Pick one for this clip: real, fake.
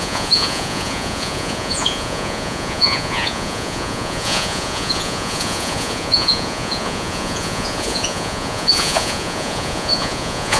fake